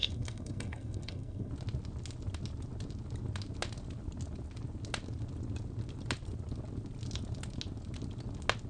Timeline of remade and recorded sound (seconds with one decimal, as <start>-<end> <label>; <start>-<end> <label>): 0.0-1.5 remade; 1.5-8.7 recorded